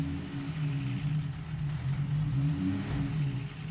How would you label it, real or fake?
real